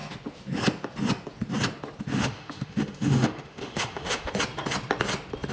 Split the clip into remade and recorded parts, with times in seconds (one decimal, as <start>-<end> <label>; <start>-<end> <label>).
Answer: 0.0-2.1 recorded; 2.1-4.3 remade; 4.3-5.5 recorded